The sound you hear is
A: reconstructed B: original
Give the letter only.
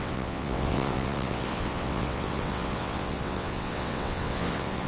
A